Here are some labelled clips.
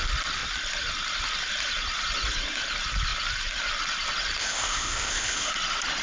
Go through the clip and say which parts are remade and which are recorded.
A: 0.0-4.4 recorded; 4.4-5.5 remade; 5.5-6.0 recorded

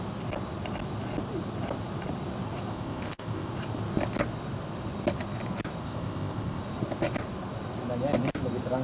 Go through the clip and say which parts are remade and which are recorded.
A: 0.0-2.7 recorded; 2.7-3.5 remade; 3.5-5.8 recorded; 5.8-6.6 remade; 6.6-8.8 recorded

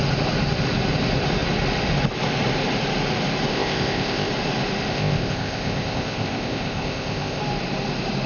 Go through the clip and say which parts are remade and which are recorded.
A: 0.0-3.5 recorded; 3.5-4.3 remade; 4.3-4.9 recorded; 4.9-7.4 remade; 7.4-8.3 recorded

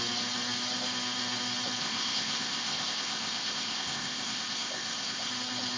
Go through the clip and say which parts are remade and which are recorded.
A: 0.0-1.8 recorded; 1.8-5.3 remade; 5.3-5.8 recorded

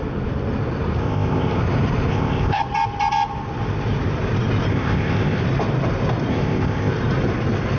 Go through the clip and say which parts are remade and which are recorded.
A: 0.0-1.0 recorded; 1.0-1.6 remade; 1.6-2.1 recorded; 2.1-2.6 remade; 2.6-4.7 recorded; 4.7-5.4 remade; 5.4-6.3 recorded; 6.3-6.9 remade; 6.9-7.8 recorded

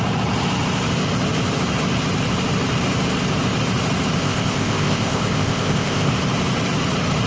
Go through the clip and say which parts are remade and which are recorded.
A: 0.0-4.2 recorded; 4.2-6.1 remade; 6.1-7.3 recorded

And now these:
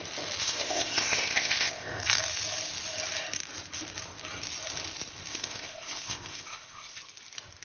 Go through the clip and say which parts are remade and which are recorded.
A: 0.0-0.4 recorded; 0.4-2.0 remade; 2.0-5.3 recorded; 5.3-7.0 remade; 7.0-7.6 recorded